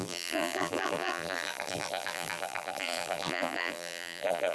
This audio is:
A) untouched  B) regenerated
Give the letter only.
B